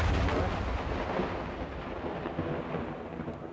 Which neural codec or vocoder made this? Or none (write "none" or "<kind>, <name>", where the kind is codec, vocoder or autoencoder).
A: none